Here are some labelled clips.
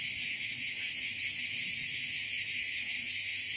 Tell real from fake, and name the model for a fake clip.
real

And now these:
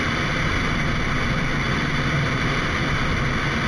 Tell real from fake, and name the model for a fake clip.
real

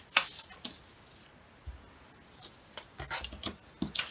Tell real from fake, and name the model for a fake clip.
real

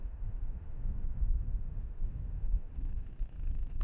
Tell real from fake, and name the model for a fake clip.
fake, autoencoder, DAC-VAE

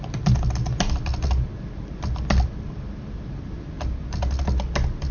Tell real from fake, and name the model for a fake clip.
real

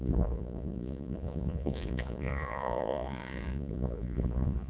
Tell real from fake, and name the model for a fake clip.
fake, vocoder, Vocos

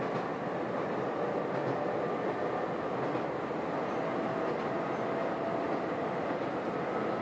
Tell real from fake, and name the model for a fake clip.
real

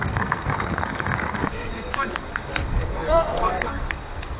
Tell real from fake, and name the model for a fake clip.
fake, codec, SNAC